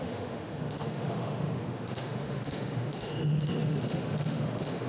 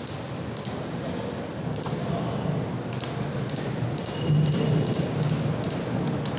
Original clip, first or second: second